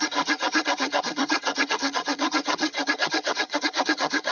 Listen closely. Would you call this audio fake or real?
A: fake